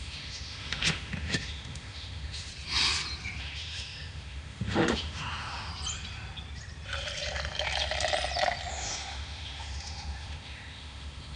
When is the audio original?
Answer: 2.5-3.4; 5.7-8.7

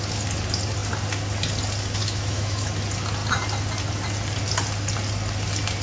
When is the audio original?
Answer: 0.0-2.0; 2.7-5.8

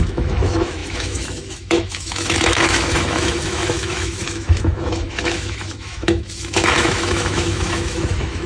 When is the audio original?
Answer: none